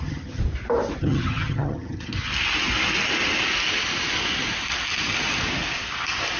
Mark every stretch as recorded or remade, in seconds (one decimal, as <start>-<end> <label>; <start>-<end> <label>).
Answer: 0.0-0.4 remade; 0.4-1.0 recorded; 1.0-2.3 remade; 2.3-6.4 recorded